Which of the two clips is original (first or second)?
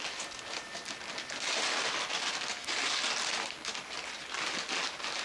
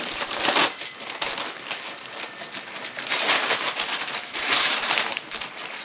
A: first